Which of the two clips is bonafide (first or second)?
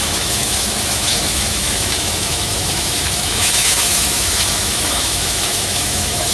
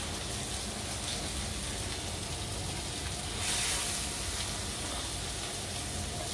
second